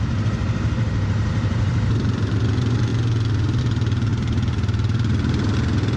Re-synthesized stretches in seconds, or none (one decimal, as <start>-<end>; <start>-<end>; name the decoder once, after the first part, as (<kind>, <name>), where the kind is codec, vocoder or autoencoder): 0.0-2.9 (vocoder, BigVGAN v2); 3.6-6.0